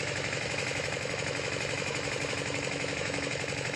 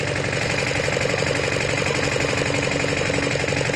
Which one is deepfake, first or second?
first